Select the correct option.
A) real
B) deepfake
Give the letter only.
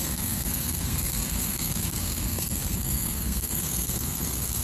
B